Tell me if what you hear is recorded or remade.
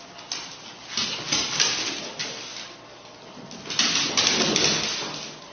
recorded